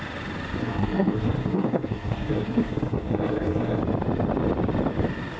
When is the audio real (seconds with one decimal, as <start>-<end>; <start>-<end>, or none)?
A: 0.0-0.6; 3.8-5.4